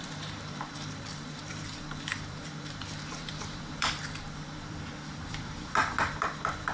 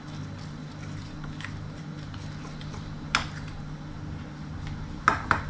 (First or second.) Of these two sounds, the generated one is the first